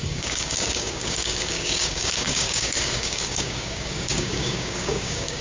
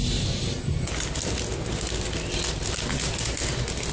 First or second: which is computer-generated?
first